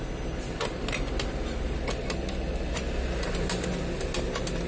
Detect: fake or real real